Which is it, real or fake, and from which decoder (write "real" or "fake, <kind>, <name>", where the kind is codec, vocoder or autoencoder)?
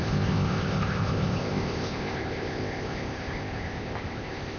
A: fake, codec, ZipCodec